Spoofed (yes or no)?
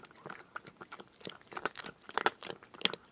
no